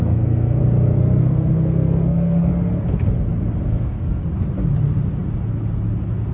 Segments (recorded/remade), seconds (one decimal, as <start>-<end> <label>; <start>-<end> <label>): 0.0-0.6 remade; 0.6-1.2 recorded; 1.2-2.5 remade; 2.5-3.6 recorded; 3.6-4.2 remade; 4.2-6.3 recorded